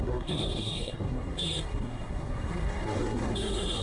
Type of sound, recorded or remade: remade